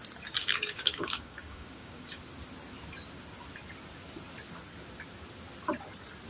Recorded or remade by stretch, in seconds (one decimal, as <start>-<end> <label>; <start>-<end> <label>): 0.0-0.4 recorded; 0.4-2.2 remade; 2.2-6.3 recorded